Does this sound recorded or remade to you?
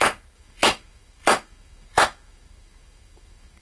remade